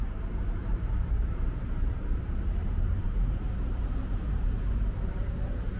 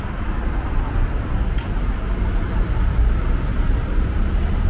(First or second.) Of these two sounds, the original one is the second